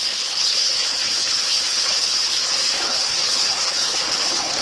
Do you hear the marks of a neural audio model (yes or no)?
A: yes